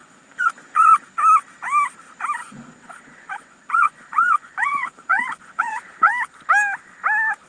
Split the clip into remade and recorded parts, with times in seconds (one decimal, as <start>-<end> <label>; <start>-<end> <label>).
0.0-1.0 remade; 1.0-2.4 recorded; 2.4-6.1 remade; 6.1-7.5 recorded